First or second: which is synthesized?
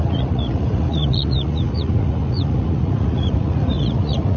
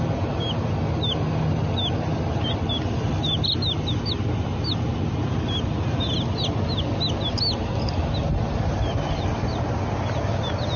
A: first